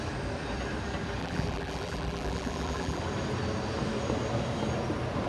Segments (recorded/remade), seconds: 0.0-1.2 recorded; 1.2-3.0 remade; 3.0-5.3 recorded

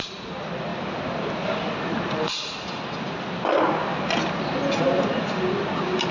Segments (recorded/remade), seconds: 0.0-6.1 recorded

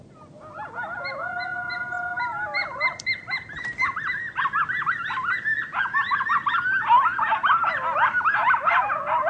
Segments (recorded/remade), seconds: 0.0-1.8 recorded; 1.8-4.1 remade; 4.1-9.3 recorded

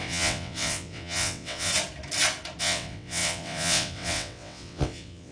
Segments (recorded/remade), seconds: 0.0-1.7 remade; 1.7-2.6 recorded; 2.6-5.3 remade

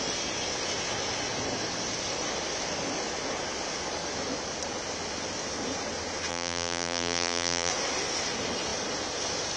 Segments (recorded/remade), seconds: 0.0-6.3 recorded; 6.3-7.7 remade; 7.7-9.6 recorded

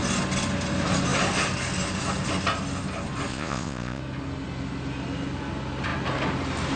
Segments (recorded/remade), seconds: 0.0-3.3 recorded; 3.3-4.0 remade; 4.0-6.8 recorded